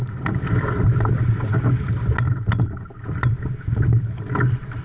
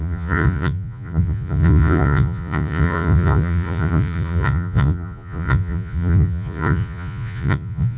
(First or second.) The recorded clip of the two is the first